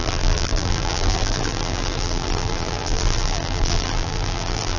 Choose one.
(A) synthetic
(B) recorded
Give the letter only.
A